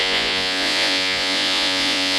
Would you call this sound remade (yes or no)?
yes